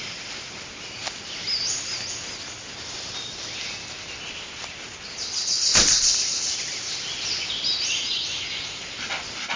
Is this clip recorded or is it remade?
recorded